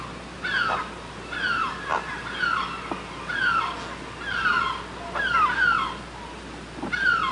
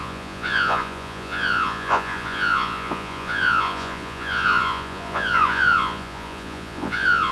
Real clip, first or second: first